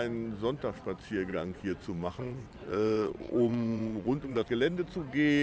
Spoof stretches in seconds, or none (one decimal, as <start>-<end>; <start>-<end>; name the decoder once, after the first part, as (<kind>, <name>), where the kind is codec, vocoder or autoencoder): 1.3-4.5 (vocoder, WaveNeXt)